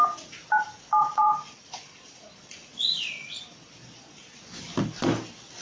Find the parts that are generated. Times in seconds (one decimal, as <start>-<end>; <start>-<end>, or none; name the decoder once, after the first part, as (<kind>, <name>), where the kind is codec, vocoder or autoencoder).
1.0-4.4 (vocoder, Vocos)